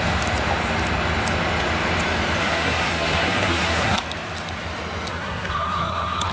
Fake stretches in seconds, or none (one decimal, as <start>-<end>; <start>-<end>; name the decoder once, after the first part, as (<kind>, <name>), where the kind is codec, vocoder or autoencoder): 2.4-4.0 (codec, SNAC); 5.1-6.3